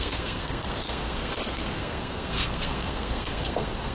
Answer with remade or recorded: remade